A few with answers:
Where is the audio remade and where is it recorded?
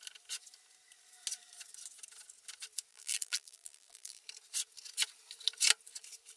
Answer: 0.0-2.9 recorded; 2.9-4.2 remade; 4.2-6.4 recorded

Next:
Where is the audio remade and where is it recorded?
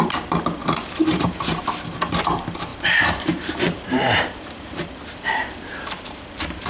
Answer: 0.0-0.6 recorded; 0.6-1.6 remade; 1.6-2.7 recorded; 2.7-6.7 remade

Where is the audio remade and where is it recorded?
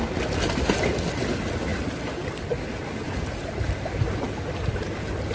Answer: 0.0-1.7 recorded; 1.7-2.6 remade; 2.6-5.3 recorded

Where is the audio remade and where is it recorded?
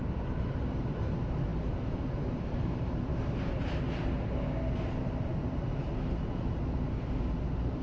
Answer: 0.0-3.1 remade; 3.1-7.8 recorded